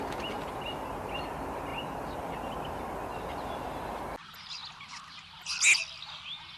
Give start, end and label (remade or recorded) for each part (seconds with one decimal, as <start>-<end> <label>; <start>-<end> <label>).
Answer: 0.0-6.6 recorded